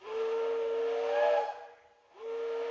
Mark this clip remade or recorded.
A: recorded